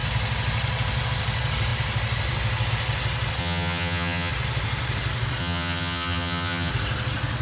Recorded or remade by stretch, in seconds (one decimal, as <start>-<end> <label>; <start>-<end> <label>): 0.0-3.4 recorded; 3.4-4.3 remade; 4.3-5.4 recorded; 5.4-6.7 remade; 6.7-7.4 recorded